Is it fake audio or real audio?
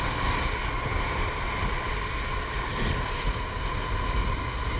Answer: real